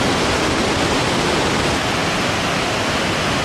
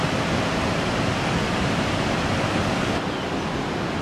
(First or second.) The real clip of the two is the first